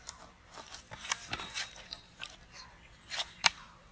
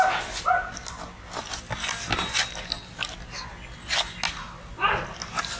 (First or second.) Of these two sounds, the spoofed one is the first